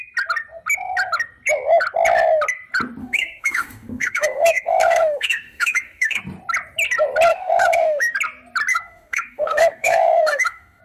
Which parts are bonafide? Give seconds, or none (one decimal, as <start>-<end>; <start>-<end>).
0.0-3.0; 6.2-7.3; 8.1-8.7